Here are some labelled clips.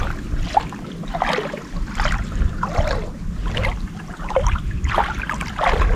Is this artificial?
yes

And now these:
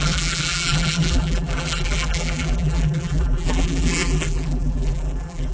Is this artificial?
yes